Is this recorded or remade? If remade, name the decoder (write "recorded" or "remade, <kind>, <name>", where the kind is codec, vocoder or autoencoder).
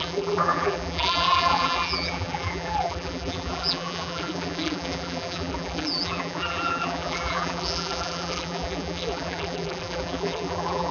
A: remade, vocoder, BigVGAN v2